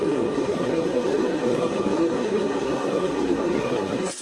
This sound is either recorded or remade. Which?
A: remade